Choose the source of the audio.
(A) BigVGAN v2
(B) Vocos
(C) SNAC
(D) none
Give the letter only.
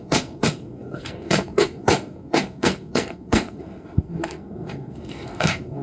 C